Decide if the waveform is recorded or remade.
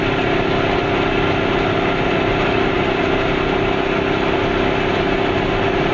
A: recorded